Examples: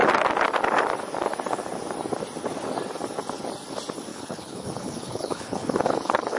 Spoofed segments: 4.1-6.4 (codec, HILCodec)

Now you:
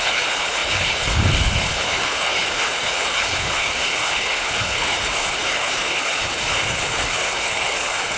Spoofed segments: 0.0-8.2 (codec, HILCodec)

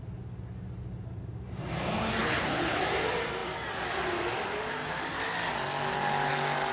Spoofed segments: 2.2-2.8 (codec, HILCodec)

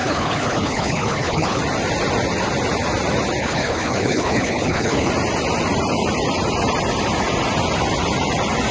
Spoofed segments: 0.0-1.6 (codec, HILCodec); 3.4-5.1

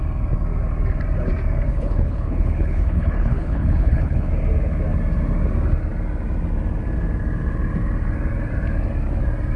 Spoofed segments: 1.7-4.3 (codec, HILCodec)

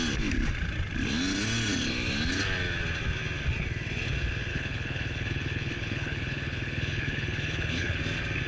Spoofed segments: 4.5-8.0 (codec, HILCodec)